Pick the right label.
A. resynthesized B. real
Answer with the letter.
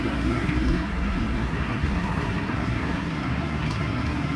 A